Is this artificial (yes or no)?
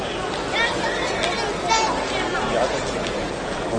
no